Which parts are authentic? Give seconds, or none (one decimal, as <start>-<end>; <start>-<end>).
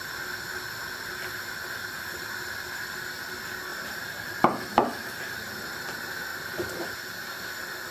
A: 0.0-3.7; 5.2-6.3; 7.5-7.9